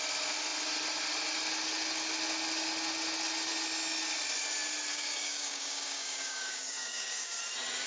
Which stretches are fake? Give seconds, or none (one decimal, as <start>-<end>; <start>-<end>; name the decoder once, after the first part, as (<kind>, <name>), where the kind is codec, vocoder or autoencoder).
4.9-7.4 (codec, DAC)